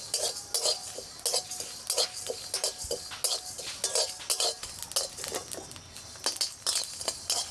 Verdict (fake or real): real